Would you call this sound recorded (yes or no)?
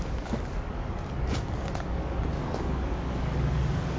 no